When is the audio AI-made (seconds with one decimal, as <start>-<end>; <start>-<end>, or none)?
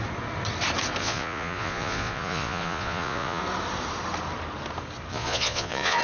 1.0-3.4; 5.1-6.0